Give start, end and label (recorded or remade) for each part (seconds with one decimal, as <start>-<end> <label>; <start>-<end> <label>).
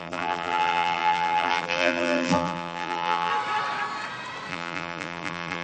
0.0-3.3 remade; 3.3-4.5 recorded; 4.5-5.6 remade